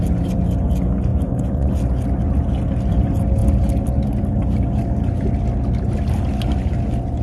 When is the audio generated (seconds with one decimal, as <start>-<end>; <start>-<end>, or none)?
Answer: 1.1-1.7